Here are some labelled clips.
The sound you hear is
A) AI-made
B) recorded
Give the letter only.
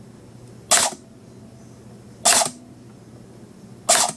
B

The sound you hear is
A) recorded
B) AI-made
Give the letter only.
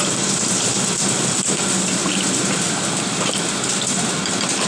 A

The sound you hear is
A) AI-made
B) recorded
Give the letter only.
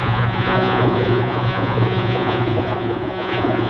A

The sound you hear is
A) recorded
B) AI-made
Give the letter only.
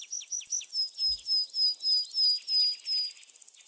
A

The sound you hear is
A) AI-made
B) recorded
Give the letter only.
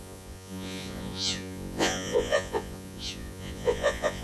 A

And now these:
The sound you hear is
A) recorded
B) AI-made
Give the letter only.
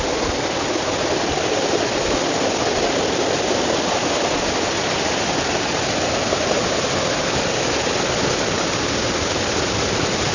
A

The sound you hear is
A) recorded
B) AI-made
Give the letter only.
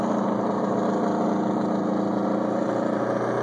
A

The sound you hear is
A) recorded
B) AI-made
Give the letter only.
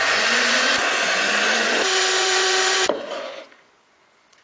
B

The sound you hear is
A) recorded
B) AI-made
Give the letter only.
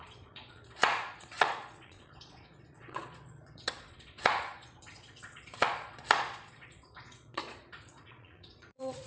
B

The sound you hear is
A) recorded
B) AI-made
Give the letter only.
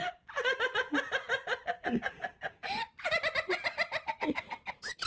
A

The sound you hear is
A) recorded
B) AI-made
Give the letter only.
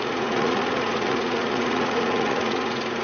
B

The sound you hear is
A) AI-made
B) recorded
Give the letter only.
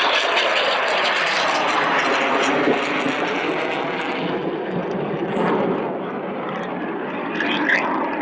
B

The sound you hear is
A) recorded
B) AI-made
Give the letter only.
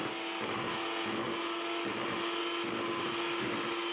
A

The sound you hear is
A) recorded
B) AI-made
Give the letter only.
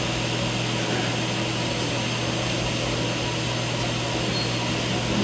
A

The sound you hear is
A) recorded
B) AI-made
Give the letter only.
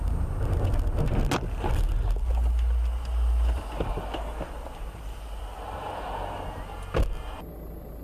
A